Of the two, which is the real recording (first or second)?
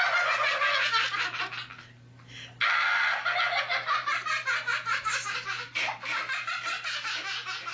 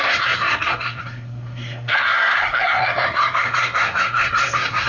first